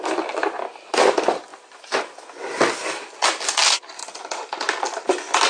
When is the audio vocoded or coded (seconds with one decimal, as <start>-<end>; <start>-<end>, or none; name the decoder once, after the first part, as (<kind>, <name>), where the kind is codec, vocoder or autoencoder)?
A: 1.5-2.0 (vocoder, BigVGAN v2)